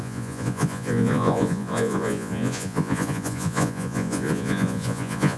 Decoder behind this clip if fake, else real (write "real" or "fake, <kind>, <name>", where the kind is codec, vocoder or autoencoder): fake, vocoder, Vocos